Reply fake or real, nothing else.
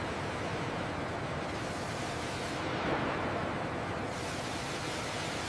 real